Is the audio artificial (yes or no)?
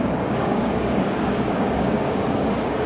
yes